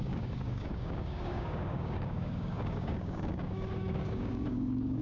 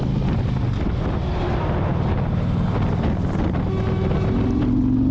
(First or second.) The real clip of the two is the second